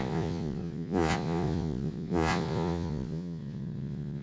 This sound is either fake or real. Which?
fake